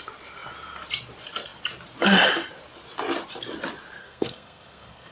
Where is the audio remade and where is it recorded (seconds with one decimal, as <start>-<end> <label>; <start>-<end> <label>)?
0.0-4.0 recorded; 4.0-5.1 remade